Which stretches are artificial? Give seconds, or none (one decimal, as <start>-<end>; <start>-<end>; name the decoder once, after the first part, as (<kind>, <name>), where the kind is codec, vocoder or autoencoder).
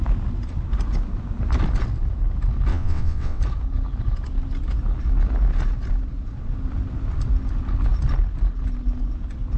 2.7-3.4 (vocoder, WaveNeXt)